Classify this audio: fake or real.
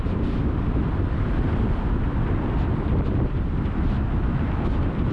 fake